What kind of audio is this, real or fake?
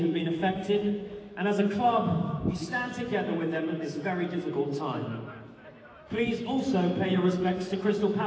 fake